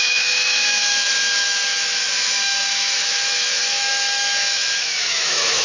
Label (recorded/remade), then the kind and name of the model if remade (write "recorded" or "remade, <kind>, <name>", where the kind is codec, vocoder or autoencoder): remade, autoencoder, DAC-VAE